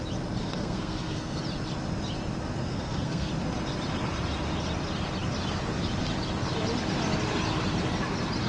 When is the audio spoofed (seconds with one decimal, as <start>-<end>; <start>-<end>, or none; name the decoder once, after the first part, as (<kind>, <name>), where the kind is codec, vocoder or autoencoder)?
0.4-1.4 (codec, SNAC); 2.6-3.3